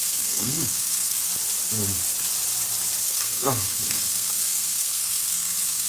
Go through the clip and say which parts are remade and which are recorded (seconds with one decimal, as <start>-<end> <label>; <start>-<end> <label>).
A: 0.0-1.3 remade; 1.3-3.0 recorded; 3.0-5.9 remade